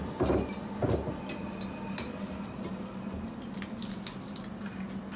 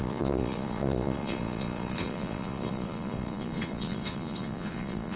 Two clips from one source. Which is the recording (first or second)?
first